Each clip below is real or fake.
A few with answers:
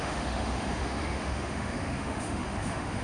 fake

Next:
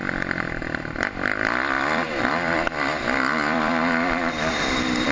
fake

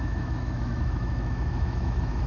fake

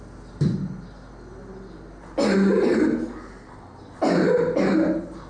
real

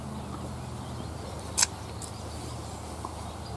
real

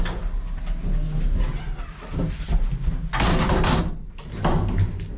real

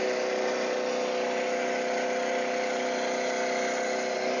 real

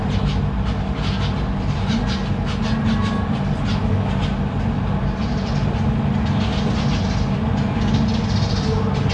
real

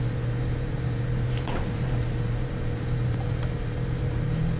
fake